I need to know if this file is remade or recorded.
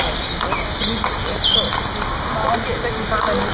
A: recorded